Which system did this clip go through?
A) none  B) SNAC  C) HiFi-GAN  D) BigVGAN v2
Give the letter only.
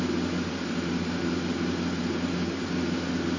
A